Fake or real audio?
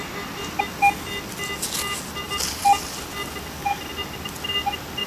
real